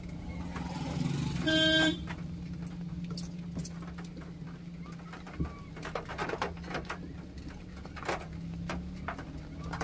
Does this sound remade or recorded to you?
recorded